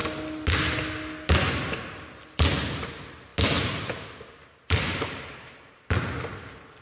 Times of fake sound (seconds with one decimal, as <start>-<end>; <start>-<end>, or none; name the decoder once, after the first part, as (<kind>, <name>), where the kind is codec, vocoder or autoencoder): none